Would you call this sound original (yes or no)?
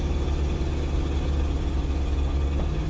yes